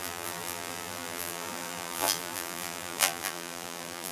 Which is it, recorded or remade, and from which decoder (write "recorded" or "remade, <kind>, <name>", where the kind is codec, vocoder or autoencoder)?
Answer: remade, vocoder, BigVGAN v2